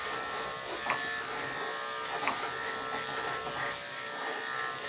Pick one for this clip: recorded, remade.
recorded